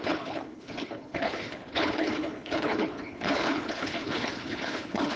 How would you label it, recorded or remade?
remade